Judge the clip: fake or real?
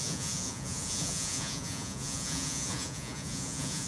fake